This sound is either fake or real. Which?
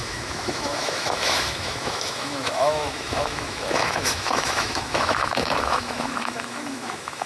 fake